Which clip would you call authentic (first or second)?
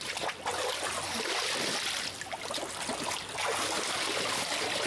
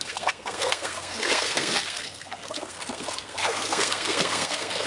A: first